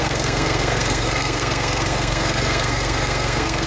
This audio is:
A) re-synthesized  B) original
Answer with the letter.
A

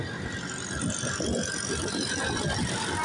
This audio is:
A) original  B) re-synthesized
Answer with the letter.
A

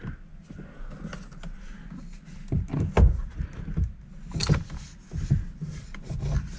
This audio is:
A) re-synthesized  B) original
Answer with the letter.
B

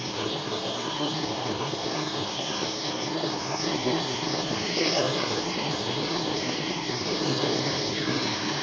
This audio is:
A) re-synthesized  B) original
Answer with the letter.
A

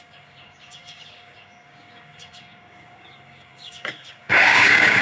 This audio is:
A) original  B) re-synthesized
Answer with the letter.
B